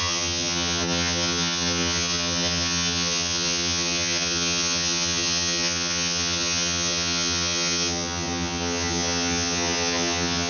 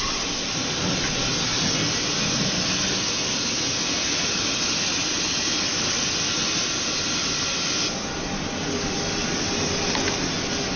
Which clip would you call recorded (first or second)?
second